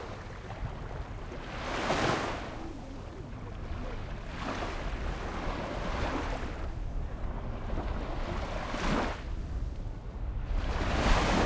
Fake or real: real